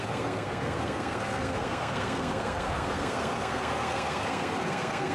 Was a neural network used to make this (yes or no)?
yes